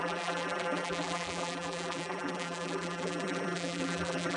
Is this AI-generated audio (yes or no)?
yes